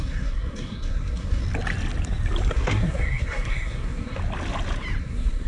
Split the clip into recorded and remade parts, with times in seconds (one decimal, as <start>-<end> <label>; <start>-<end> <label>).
0.0-1.4 remade; 1.4-2.5 recorded; 2.5-4.2 remade; 4.2-5.0 recorded; 5.0-5.5 remade